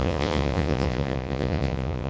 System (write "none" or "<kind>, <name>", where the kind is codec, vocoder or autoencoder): vocoder, Vocos